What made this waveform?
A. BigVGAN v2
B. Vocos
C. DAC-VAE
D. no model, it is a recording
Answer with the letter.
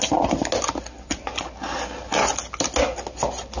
D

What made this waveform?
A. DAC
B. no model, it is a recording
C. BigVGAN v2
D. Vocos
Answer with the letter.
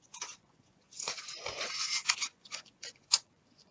D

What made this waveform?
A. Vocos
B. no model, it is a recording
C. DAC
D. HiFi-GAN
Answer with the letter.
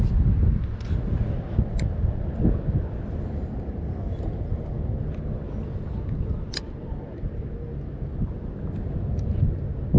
B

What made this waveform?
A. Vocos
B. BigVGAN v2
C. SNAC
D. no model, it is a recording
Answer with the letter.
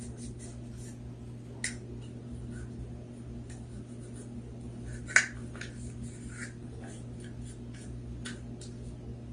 D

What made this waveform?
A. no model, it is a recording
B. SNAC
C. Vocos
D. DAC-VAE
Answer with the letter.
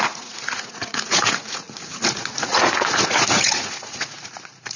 C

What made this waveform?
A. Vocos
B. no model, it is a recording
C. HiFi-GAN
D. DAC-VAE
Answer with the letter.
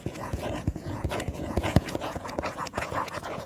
A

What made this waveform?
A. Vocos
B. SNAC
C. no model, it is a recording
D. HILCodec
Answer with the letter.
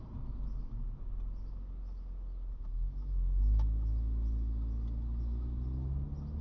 C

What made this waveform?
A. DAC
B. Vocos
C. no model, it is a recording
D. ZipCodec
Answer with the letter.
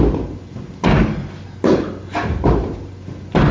C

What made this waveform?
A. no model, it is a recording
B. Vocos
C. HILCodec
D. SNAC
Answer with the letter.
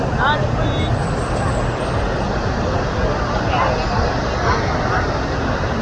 A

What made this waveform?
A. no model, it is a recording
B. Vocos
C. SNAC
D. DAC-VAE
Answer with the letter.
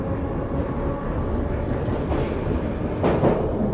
A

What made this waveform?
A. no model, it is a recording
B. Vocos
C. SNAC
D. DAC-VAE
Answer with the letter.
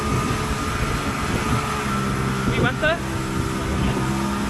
A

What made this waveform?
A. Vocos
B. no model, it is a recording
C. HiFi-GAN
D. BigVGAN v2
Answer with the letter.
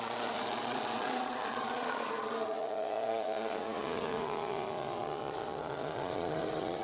A